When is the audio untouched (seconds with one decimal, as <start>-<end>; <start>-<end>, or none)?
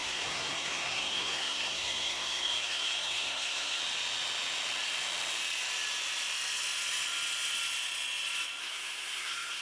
3.8-8.6